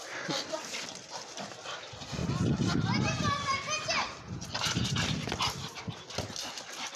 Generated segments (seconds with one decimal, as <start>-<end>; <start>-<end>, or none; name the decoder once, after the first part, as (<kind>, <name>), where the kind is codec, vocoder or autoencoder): none